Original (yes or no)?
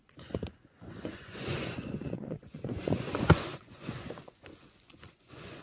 no